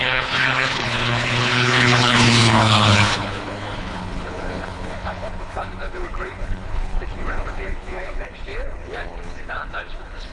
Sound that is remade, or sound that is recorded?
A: remade